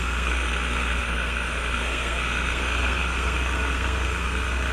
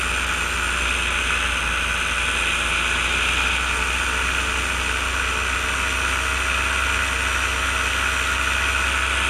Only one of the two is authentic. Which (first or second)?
second